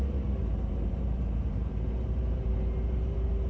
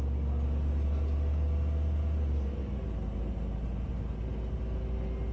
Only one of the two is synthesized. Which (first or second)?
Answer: first